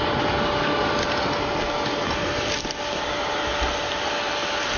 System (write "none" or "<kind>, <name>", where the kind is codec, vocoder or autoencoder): none